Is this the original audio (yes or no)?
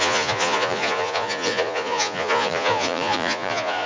no